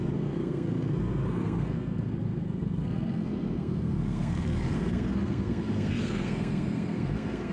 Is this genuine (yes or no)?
no